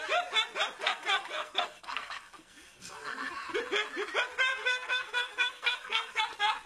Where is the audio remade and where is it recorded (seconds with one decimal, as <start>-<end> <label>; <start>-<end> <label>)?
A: 0.0-0.8 recorded; 0.8-3.6 remade; 3.6-4.5 recorded; 4.5-6.2 remade; 6.2-6.7 recorded